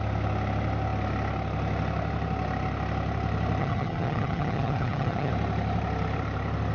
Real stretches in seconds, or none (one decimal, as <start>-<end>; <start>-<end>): 0.0-3.6; 5.3-6.7